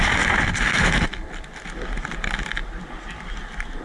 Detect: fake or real real